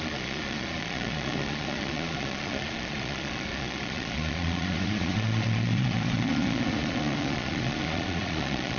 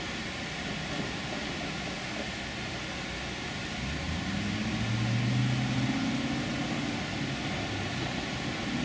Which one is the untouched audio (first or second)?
second